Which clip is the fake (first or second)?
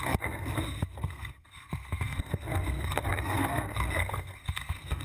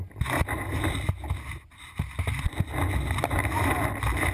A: first